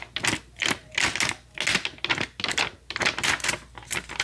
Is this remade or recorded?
recorded